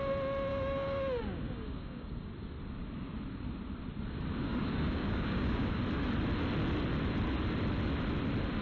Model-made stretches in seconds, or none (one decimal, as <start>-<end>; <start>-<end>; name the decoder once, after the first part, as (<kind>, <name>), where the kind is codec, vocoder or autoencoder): 0.5-2.3 (codec, DAC); 4.5-5.8